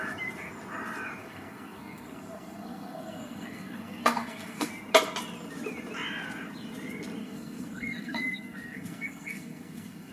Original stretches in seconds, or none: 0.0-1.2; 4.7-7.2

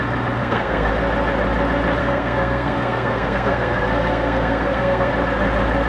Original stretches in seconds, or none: 0.0-0.4; 0.9-2.0; 5.1-5.9